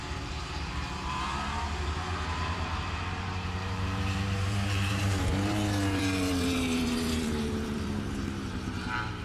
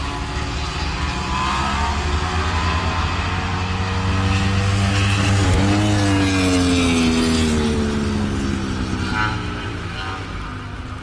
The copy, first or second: first